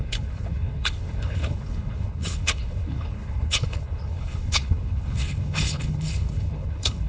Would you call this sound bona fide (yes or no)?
no